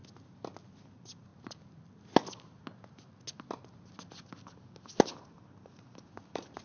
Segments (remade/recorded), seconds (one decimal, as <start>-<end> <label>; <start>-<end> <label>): 0.0-0.7 recorded; 0.7-1.3 remade; 1.3-5.3 recorded; 5.3-6.6 remade